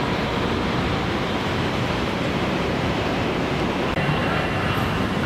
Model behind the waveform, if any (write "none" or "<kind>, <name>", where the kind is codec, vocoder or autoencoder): vocoder, BigVGAN v2